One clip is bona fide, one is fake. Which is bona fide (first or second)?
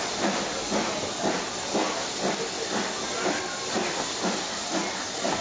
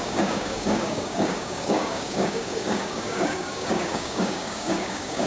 first